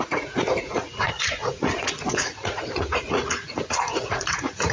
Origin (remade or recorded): remade